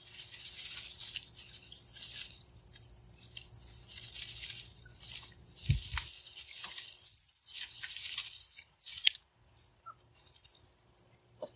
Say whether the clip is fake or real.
real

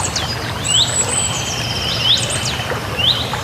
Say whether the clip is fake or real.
real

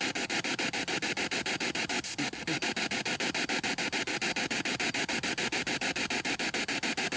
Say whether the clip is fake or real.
real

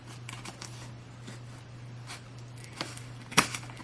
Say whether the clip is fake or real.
fake